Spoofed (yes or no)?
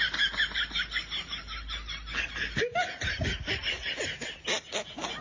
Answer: no